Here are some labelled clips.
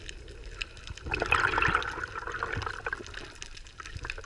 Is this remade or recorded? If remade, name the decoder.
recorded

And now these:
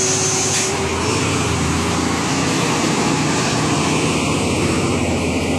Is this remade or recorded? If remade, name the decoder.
recorded